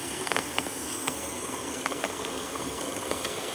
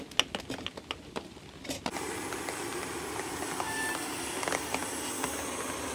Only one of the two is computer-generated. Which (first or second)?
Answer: first